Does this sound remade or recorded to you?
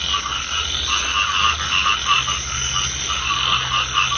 recorded